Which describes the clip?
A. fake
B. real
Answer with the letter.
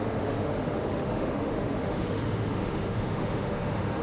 A